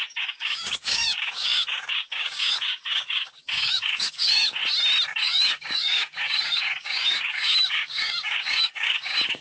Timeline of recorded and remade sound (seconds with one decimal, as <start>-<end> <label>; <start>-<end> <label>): 0.0-4.6 remade; 4.6-5.1 recorded; 5.1-9.4 remade